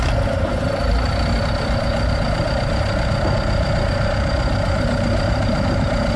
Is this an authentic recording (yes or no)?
no